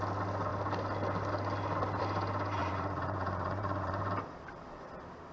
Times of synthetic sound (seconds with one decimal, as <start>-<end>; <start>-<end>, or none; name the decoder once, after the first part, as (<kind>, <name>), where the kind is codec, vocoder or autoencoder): 2.6-4.0 (vocoder, Vocos)